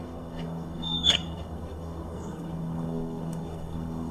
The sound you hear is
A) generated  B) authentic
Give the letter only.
A